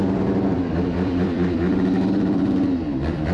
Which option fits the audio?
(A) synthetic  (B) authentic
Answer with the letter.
A